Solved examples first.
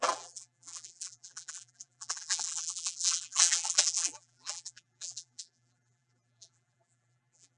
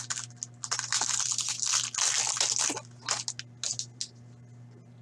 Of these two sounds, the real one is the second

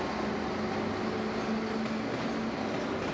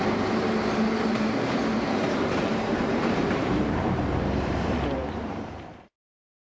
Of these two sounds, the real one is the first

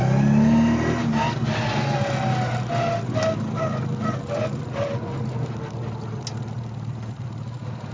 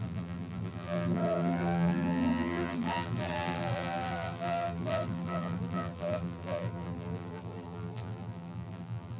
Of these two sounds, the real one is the first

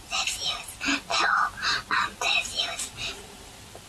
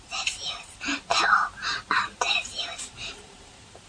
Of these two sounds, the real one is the first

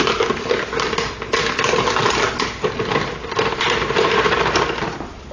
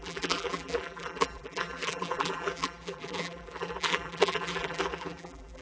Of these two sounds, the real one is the first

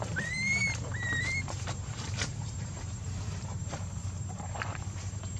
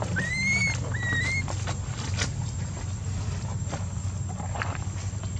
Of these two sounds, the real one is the second